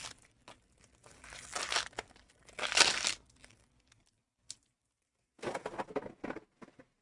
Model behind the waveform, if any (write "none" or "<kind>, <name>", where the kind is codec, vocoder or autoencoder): none